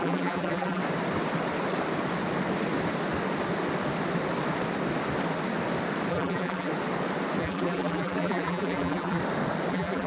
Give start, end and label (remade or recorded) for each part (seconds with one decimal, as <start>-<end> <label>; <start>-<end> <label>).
0.0-0.8 remade; 0.8-6.1 recorded; 6.1-6.7 remade; 6.7-7.4 recorded; 7.4-9.2 remade; 9.2-9.7 recorded; 9.7-10.1 remade